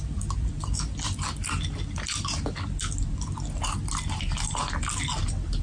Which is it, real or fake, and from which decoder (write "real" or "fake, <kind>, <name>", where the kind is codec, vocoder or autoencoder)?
real